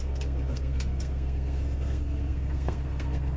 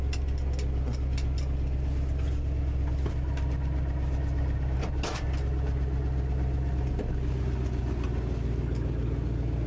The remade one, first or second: first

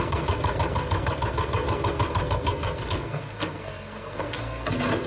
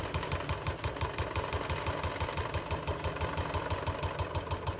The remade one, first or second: first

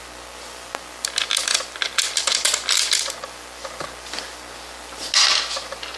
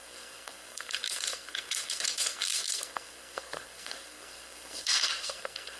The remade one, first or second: second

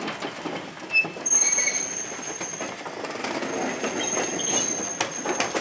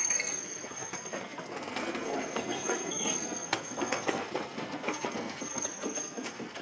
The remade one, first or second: second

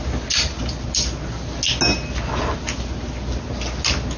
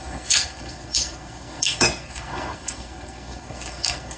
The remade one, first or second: second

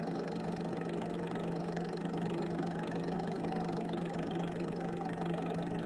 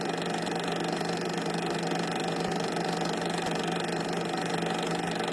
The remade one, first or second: first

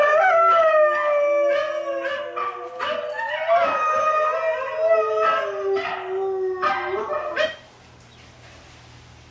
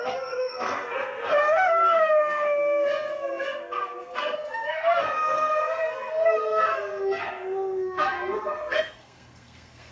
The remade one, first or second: second